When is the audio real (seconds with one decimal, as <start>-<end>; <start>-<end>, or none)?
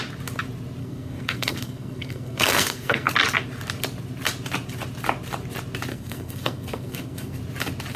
0.0-0.8; 3.1-5.9; 7.4-8.0